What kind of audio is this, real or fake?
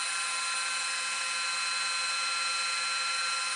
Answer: real